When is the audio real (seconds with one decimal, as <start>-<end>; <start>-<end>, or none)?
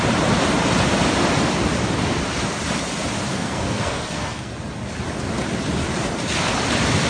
0.0-3.3; 4.5-7.1